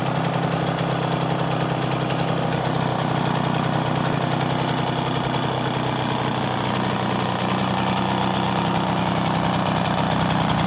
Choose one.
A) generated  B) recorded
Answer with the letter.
B